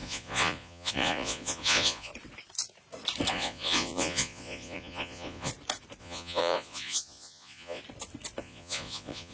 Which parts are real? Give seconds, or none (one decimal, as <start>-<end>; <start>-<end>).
2.1-3.3; 5.5-6.0; 7.8-8.4